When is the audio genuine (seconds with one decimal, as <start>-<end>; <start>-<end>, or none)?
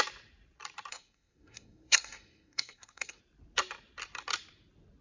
0.0-0.9; 3.2-5.0